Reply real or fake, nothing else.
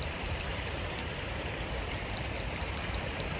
fake